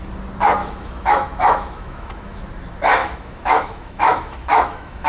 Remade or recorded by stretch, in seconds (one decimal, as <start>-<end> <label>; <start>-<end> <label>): 0.0-0.6 recorded; 0.6-2.4 remade; 2.4-3.0 recorded; 3.0-5.1 remade